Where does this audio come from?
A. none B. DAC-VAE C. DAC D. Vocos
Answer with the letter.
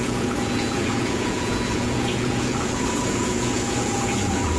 D